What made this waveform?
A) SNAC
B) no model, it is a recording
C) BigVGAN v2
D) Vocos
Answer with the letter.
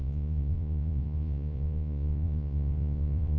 D